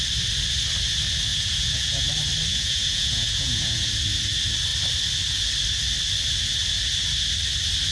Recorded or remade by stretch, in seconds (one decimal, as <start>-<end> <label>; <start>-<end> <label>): 0.0-1.3 recorded; 1.3-2.1 remade; 2.1-2.5 recorded; 2.5-3.9 remade; 3.9-7.9 recorded